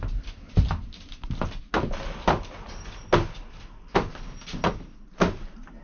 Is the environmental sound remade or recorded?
recorded